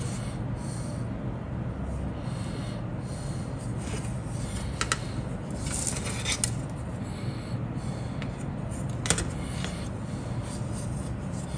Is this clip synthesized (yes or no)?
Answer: no